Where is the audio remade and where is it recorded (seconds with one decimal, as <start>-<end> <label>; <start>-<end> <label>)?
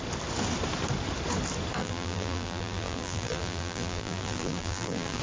0.0-1.8 recorded; 1.8-5.2 remade